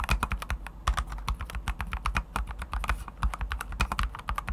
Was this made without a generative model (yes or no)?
yes